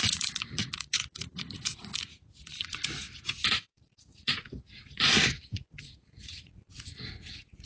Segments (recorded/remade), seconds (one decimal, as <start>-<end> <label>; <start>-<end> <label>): 0.0-7.7 remade